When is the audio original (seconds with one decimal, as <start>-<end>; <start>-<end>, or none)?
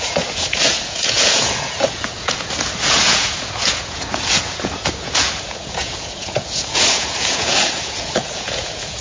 none